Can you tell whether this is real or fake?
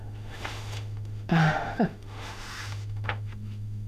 fake